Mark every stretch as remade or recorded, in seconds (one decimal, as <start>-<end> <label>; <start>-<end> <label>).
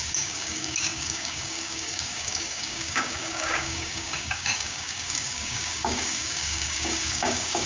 0.0-7.7 remade